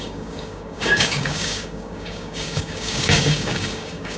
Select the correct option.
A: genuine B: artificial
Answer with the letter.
B